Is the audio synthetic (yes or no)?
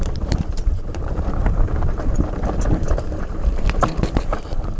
yes